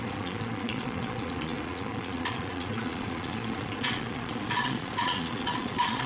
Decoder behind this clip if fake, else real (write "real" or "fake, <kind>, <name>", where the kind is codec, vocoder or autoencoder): fake, vocoder, Vocos